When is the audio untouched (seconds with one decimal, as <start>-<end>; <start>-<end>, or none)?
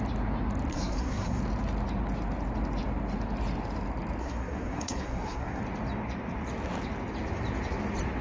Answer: 0.0-0.7; 1.4-4.2; 5.6-8.2